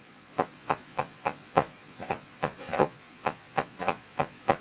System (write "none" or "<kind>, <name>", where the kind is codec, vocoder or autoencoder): vocoder, Vocos